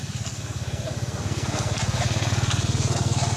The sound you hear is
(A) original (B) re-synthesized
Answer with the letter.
B